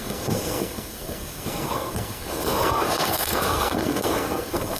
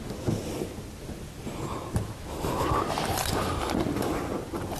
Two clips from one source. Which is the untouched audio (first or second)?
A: second